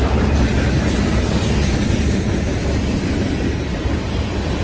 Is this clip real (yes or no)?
yes